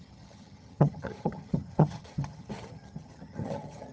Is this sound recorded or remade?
remade